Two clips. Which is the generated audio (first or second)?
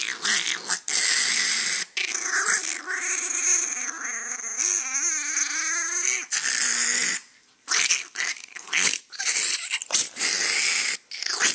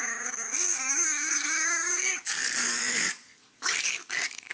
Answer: second